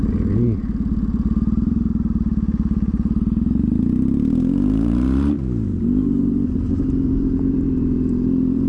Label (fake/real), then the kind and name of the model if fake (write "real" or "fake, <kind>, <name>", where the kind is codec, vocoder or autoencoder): fake, vocoder, BigVGAN v2